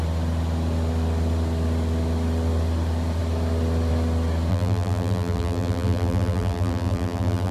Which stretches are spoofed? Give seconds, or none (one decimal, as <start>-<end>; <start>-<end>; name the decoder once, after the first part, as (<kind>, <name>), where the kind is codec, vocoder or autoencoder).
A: 4.5-7.5 (vocoder, BigVGAN v2)